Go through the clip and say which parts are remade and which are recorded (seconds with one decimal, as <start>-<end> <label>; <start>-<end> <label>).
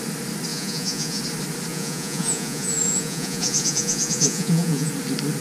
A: 0.0-0.5 recorded; 0.5-1.2 remade; 1.2-1.7 recorded; 1.7-4.9 remade; 4.9-5.4 recorded